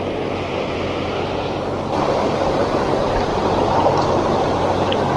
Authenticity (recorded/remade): recorded